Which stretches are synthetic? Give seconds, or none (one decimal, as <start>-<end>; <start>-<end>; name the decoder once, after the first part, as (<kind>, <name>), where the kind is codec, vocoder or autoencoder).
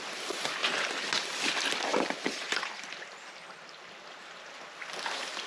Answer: 0.6-1.1 (vocoder, BigVGAN v2); 1.9-2.8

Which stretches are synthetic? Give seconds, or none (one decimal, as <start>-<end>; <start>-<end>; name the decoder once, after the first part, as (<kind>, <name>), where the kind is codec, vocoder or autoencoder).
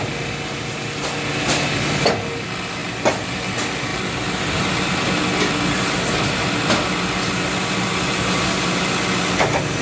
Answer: 2.8-3.3 (vocoder, BigVGAN v2); 3.9-5.2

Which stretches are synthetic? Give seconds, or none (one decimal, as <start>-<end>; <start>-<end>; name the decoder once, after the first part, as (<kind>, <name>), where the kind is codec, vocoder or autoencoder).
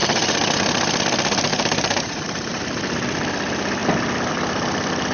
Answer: 0.0-0.7 (vocoder, BigVGAN v2); 1.5-2.6